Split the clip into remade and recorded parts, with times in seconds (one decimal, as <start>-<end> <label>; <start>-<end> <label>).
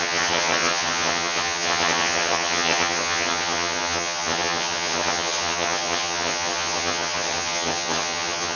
0.0-8.6 remade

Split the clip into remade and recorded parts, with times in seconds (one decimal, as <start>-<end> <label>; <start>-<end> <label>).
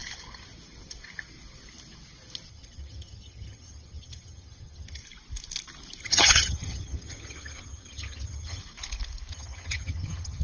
0.0-2.5 recorded; 2.5-5.0 remade; 5.0-6.0 recorded; 6.0-8.6 remade; 8.6-9.3 recorded; 9.3-10.4 remade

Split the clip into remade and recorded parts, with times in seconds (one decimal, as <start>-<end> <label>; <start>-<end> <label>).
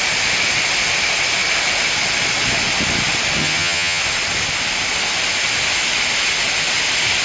0.0-3.4 recorded; 3.4-4.0 remade; 4.0-7.2 recorded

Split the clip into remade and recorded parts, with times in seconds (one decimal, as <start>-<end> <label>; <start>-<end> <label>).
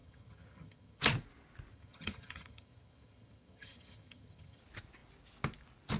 0.0-1.0 remade; 1.0-1.7 recorded; 1.7-4.6 remade; 4.6-6.0 recorded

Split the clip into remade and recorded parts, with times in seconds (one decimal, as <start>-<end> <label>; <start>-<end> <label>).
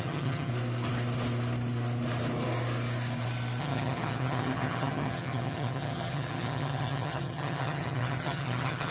0.0-0.5 remade; 0.5-3.6 recorded; 3.6-8.9 remade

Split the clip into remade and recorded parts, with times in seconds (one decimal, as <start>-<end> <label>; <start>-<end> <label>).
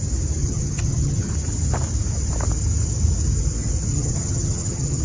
0.0-0.4 recorded; 0.4-1.3 remade; 1.3-3.9 recorded; 3.9-5.0 remade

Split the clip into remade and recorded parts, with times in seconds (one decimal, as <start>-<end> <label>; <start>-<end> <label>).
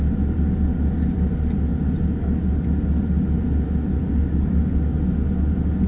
0.0-5.9 recorded